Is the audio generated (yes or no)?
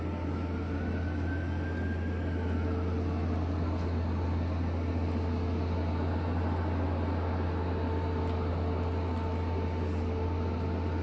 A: no